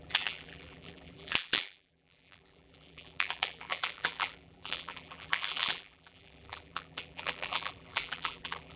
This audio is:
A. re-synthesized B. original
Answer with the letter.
A